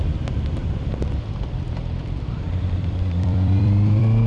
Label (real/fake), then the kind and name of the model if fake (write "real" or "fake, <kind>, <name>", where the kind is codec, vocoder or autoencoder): fake, vocoder, BigVGAN v2